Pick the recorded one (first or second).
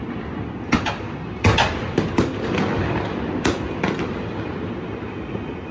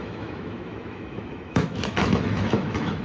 first